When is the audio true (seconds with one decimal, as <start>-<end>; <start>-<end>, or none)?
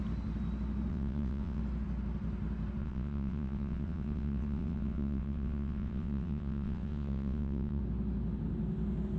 0.0-0.9; 1.6-2.8; 7.8-9.2